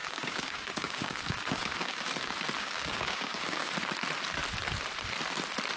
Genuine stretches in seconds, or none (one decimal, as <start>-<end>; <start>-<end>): 2.1-2.6; 3.7-5.8